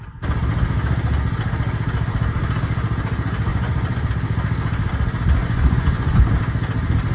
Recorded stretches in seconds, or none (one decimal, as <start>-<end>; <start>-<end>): 0.0-3.5; 4.1-5.4; 6.2-7.1